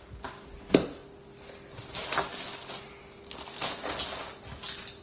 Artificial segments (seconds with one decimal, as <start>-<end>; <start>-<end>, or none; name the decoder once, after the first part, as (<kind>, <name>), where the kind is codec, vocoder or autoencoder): none